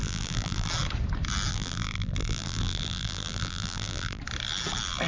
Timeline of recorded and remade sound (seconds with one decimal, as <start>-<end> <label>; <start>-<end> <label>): 0.0-0.7 remade; 0.7-1.5 recorded; 1.5-4.2 remade; 4.2-5.1 recorded

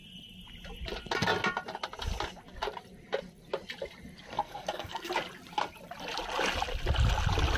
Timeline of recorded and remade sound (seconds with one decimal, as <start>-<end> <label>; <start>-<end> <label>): 0.0-4.3 recorded; 4.3-5.1 remade; 5.1-7.6 recorded

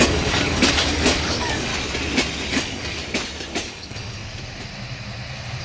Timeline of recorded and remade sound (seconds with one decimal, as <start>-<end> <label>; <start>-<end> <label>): 0.0-1.7 remade; 1.7-2.5 recorded; 2.5-3.0 remade; 3.0-3.6 recorded; 3.6-4.2 remade; 4.2-5.6 recorded

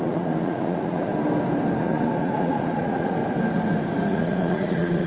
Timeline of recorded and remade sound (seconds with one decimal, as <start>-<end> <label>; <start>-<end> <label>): 0.0-1.1 remade; 1.1-1.8 recorded; 1.8-3.2 remade; 3.2-4.1 recorded; 4.1-5.1 remade

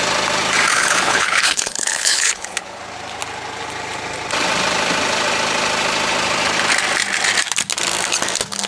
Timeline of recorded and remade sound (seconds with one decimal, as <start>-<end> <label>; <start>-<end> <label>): 0.0-0.7 recorded; 0.7-2.8 remade; 2.8-8.7 recorded

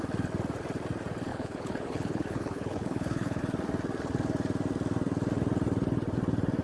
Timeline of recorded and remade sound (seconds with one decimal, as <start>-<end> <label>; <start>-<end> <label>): 0.0-1.3 recorded; 1.3-3.4 remade; 3.4-6.6 recorded

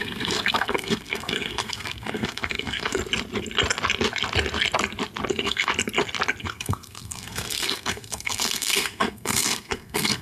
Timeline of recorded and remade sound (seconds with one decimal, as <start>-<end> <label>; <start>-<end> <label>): 0.0-3.0 remade; 3.0-5.3 recorded; 5.3-5.7 remade; 5.7-6.4 recorded; 6.4-10.2 remade